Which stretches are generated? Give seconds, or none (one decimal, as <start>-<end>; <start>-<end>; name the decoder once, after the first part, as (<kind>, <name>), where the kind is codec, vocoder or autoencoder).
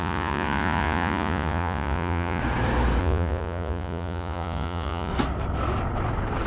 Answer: 0.0-2.4 (vocoder, Vocos); 3.0-5.1